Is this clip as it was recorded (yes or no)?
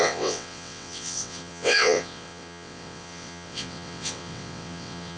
no